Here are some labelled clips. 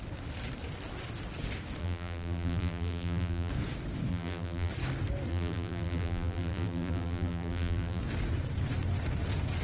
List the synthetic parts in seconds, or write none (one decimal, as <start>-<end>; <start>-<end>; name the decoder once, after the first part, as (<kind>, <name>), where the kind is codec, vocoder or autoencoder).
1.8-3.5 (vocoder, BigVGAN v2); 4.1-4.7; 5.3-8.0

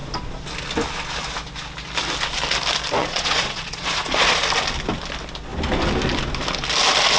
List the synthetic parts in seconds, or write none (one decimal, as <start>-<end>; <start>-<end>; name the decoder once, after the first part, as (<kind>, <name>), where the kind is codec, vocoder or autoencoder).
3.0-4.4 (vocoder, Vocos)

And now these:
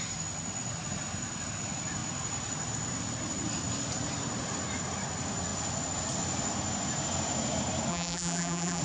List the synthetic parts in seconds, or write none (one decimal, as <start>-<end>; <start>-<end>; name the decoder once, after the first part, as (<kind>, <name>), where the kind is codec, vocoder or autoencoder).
7.9-8.8 (vocoder, BigVGAN v2)

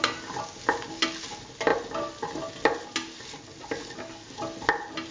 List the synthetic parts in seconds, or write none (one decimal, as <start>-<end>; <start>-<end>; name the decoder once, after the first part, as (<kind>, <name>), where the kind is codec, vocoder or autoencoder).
none

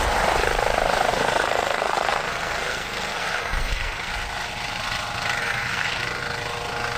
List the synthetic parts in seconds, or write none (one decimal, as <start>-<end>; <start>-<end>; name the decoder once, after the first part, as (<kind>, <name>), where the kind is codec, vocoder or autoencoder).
1.1-4.1 (codec, SNAC); 5.4-6.0

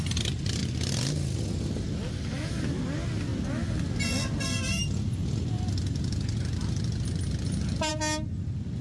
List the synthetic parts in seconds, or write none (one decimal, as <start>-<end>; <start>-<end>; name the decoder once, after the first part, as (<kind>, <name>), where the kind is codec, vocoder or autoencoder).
none

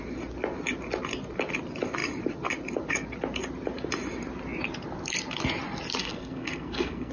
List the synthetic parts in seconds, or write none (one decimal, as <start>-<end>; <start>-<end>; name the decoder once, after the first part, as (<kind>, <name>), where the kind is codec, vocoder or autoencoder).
6.0-7.1 (codec, SNAC)

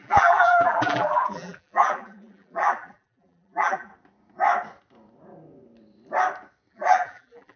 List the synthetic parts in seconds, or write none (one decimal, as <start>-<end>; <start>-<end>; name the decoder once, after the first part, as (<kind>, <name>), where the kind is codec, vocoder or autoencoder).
0.0-3.9 (vocoder, BigVGAN v2); 6.7-7.6